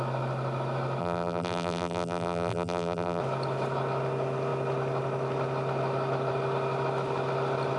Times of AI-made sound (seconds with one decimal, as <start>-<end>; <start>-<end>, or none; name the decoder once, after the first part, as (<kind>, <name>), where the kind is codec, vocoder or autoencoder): 1.0-3.2 (vocoder, BigVGAN v2)